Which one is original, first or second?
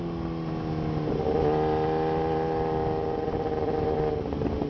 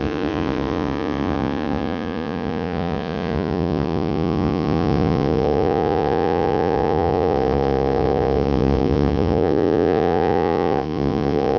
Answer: first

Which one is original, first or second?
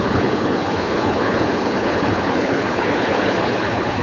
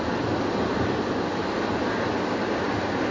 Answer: second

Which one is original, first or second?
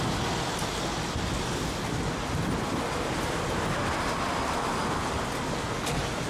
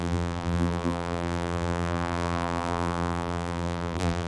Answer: first